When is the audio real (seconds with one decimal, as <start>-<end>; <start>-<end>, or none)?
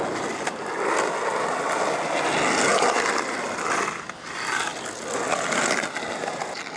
0.0-6.8